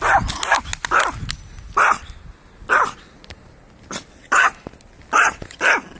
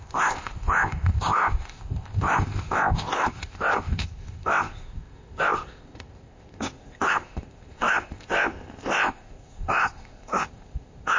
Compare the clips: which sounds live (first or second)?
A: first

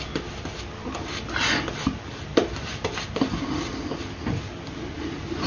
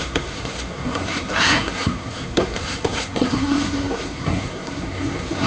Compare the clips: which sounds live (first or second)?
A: first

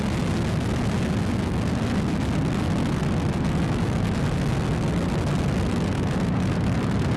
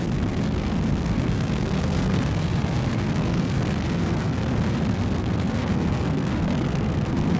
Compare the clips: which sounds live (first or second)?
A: first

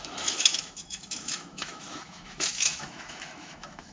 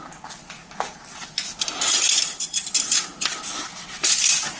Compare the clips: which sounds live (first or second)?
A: second